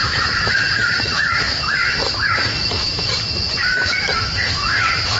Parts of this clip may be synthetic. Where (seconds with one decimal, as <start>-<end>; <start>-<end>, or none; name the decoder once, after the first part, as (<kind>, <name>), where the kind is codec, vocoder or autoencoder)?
0.0-3.1 (autoencoder, DAC-VAE); 3.6-5.2